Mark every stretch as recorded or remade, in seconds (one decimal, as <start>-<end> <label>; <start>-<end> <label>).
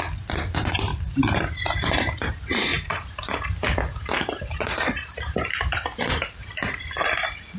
0.0-0.9 recorded; 0.9-2.3 remade; 2.3-2.7 recorded; 2.7-6.8 remade; 6.8-7.6 recorded